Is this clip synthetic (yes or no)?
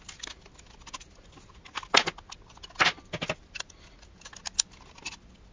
no